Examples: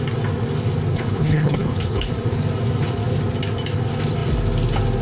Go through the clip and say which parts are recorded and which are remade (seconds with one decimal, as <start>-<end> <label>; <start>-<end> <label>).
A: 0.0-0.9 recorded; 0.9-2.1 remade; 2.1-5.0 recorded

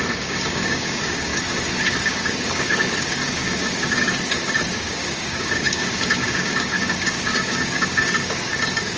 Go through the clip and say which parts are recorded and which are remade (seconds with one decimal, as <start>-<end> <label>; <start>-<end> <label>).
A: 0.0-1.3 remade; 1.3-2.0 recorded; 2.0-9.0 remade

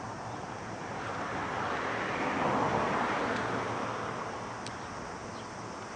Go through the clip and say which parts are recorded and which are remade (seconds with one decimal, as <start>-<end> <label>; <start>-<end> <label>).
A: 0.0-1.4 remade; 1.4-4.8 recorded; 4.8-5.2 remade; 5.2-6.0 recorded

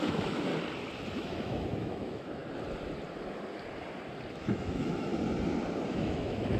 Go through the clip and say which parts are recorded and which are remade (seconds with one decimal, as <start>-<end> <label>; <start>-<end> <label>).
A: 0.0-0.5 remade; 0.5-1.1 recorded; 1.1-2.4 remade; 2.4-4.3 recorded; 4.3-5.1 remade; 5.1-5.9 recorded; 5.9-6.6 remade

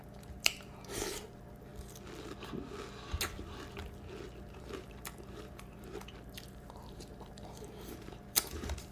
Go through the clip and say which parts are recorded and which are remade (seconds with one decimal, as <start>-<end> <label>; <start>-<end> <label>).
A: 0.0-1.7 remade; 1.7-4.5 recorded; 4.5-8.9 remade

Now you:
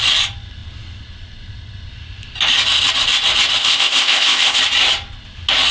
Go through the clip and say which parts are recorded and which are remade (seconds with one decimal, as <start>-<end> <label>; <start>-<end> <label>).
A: 0.0-3.6 recorded; 3.6-4.6 remade; 4.6-5.7 recorded